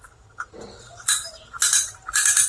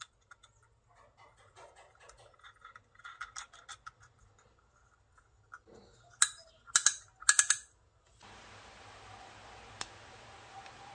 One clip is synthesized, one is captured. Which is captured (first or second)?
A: second